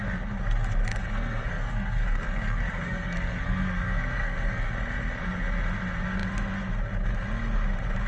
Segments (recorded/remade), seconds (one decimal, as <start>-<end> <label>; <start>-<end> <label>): 0.0-0.9 recorded; 0.9-4.7 remade; 4.7-8.1 recorded